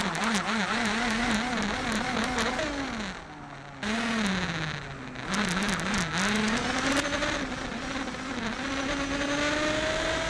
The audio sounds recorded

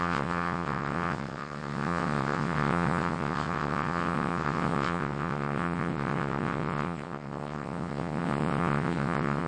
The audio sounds remade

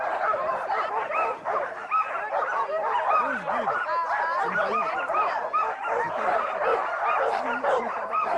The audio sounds recorded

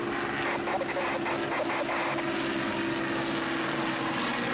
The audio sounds recorded